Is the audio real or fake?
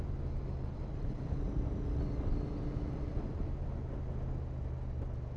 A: real